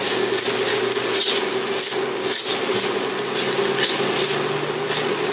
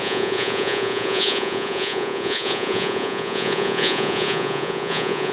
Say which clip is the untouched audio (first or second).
first